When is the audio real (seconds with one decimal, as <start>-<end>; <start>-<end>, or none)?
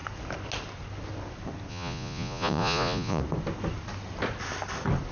0.0-1.7; 3.2-5.1